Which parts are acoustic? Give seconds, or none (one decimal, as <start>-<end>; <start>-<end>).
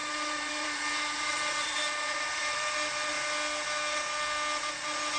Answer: 3.1-5.2